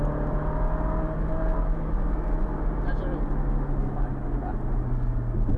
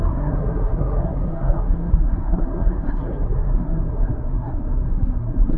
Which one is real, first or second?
first